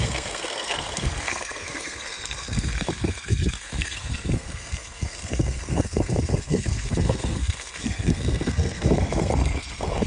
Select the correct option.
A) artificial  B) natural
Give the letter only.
A